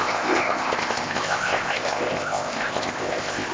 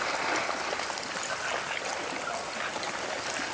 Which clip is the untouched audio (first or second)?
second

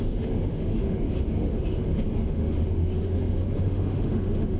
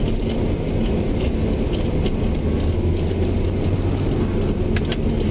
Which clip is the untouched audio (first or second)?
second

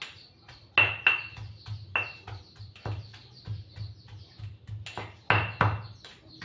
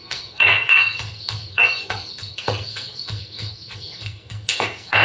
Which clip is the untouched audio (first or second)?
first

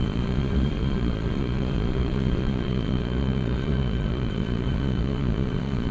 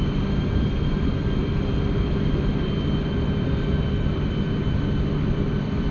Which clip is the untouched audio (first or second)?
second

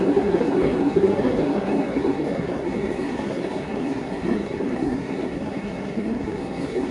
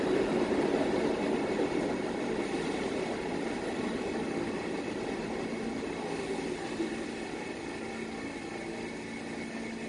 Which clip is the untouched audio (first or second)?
second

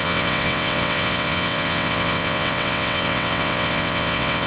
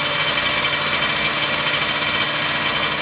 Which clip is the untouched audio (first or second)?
second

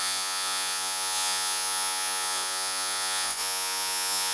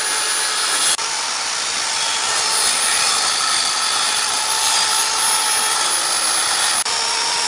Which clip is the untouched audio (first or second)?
second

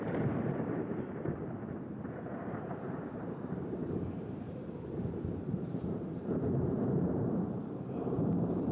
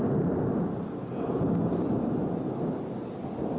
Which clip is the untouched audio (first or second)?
second